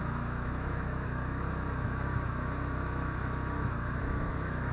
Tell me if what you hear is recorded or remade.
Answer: remade